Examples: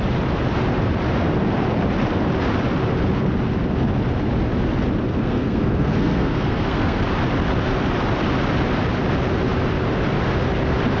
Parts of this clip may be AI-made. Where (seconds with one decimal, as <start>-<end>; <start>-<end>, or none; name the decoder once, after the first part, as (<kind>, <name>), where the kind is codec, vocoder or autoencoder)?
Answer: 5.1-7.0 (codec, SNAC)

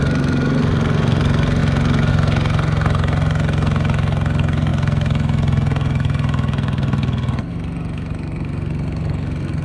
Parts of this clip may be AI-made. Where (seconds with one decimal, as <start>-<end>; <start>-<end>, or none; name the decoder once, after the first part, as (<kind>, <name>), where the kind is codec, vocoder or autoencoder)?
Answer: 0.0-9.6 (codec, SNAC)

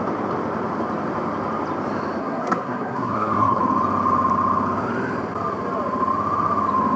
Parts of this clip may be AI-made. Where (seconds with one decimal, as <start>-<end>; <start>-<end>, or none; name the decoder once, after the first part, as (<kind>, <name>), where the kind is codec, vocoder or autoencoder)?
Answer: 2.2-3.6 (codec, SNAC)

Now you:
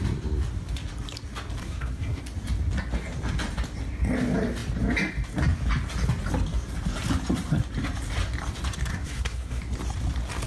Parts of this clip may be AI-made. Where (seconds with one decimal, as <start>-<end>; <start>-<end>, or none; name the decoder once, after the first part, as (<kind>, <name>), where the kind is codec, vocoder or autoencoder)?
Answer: 1.6-2.2 (codec, SNAC); 8.9-9.6

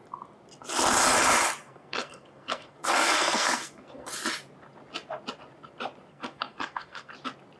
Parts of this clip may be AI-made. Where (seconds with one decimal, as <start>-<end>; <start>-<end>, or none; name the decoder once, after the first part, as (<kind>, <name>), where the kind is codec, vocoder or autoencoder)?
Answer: 1.6-4.1 (codec, SNAC); 6.1-7.1